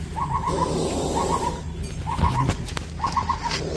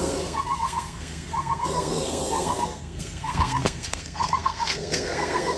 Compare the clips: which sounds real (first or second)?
first